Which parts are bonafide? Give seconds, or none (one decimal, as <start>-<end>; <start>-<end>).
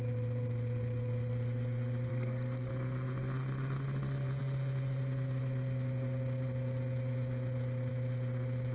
0.0-2.1; 2.7-8.7